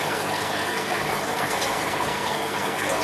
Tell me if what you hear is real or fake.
fake